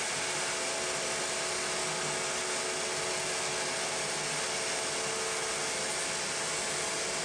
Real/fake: real